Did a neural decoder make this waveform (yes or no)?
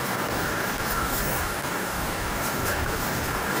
yes